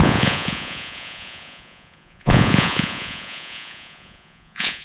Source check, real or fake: fake